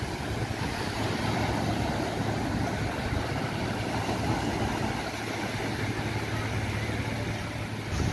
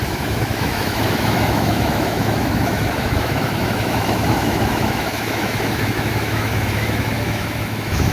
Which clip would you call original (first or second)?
first